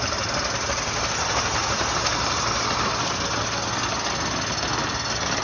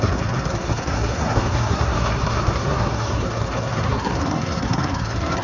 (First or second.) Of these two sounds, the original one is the first